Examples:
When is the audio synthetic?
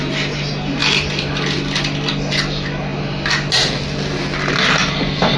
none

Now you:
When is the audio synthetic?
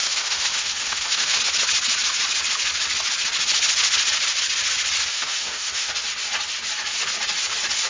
0.0-1.4 (autoencoder, DAC-VAE); 5.1-5.9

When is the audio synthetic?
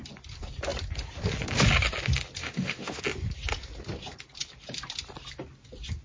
2.4-3.0 (autoencoder, DAC-VAE)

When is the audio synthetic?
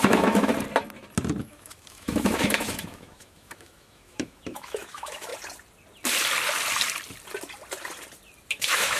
0.0-0.5 (autoencoder, DAC-VAE); 1.4-5.3; 8.5-9.0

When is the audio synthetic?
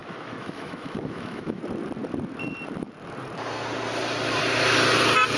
0.0-1.6 (autoencoder, DAC-VAE)